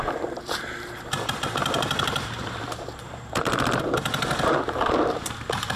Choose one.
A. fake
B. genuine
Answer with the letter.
A